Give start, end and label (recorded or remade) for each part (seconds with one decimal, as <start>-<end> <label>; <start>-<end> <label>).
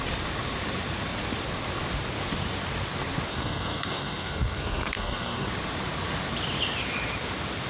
0.0-3.3 recorded; 3.3-5.5 remade; 5.5-7.7 recorded